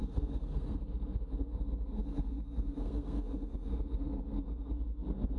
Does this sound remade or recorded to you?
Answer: remade